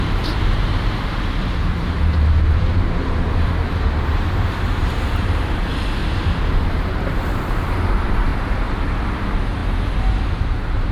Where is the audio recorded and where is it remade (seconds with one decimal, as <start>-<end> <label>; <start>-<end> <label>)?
0.0-9.6 remade; 9.6-10.2 recorded; 10.2-10.9 remade